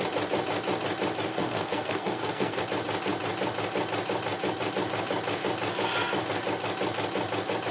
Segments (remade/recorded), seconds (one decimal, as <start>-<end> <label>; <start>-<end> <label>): 0.0-1.3 recorded; 1.3-2.6 remade; 2.6-7.7 recorded